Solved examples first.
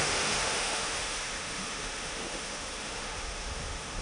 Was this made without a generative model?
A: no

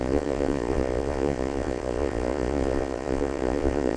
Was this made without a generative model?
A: no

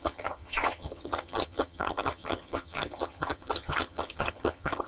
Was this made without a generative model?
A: no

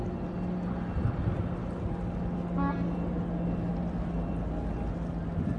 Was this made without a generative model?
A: yes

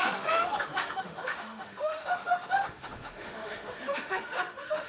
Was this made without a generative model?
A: no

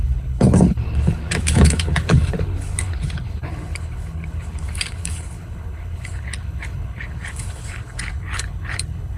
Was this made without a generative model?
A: no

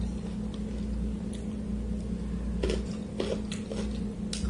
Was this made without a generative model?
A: yes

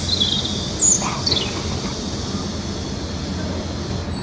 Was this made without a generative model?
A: yes